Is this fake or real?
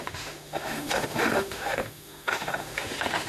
fake